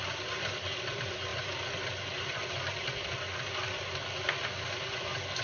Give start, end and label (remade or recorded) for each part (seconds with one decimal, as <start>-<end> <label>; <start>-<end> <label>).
0.0-5.4 recorded